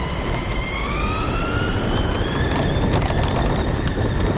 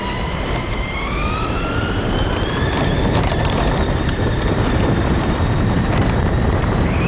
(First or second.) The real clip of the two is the first